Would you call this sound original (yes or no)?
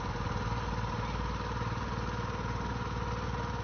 yes